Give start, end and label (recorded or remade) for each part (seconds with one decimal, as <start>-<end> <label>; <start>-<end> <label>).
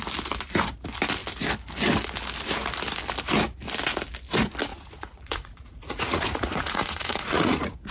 0.0-4.7 recorded; 4.7-7.9 remade